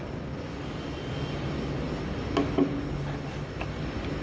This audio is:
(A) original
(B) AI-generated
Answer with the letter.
A